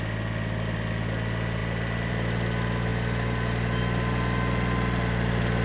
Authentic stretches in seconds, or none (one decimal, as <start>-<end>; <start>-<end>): 0.0-5.6